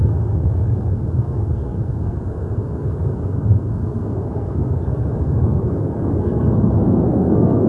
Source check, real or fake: fake